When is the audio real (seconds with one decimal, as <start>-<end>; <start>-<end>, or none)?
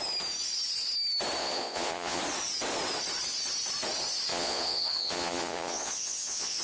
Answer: 0.0-1.4; 2.2-4.3